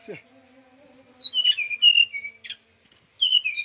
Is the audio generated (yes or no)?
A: no